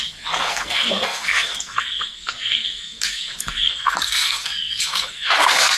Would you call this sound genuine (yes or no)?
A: no